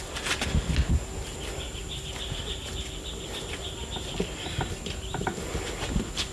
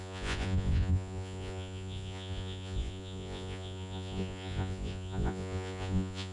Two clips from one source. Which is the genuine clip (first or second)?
first